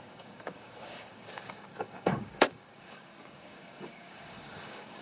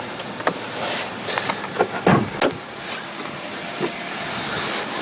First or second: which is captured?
second